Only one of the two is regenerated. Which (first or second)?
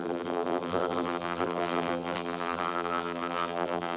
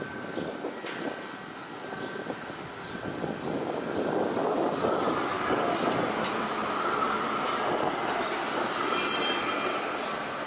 first